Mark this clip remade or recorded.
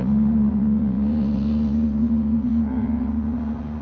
remade